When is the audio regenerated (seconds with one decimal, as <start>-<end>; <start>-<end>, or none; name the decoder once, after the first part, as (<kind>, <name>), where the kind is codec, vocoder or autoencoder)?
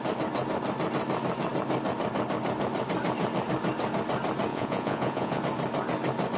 4.5-5.4 (vocoder, Vocos)